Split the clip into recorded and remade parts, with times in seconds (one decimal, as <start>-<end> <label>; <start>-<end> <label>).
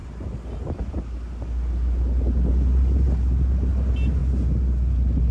0.0-5.3 recorded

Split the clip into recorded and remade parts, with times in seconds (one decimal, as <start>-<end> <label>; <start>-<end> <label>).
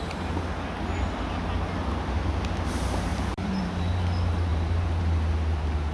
0.0-3.1 recorded; 3.1-4.0 remade; 4.0-4.5 recorded; 4.5-5.0 remade; 5.0-5.9 recorded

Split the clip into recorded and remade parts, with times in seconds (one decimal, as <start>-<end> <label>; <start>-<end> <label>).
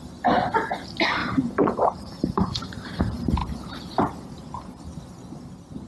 0.0-1.2 recorded; 1.2-3.0 remade; 3.0-5.9 recorded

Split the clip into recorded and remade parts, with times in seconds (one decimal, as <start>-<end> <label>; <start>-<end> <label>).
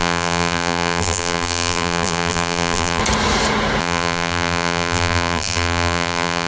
0.0-3.0 remade; 3.0-3.8 recorded; 3.8-6.5 remade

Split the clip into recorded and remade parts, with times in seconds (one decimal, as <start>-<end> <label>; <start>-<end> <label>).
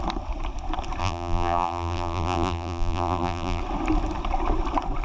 0.0-1.0 recorded; 1.0-3.6 remade; 3.6-5.0 recorded